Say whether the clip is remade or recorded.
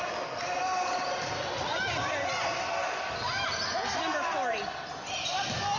recorded